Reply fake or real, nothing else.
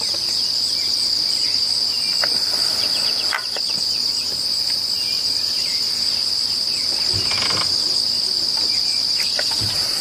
real